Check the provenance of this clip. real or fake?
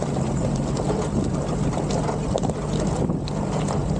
real